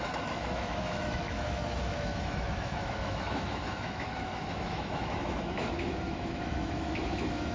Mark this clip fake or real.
fake